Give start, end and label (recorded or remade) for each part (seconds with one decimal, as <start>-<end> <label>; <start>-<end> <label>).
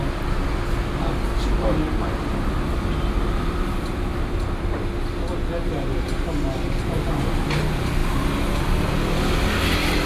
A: 0.0-10.1 recorded